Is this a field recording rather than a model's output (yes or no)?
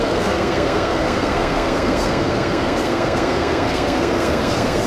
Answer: no